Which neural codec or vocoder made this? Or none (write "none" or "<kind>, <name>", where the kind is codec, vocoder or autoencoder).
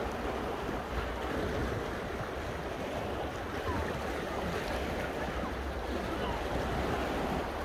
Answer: none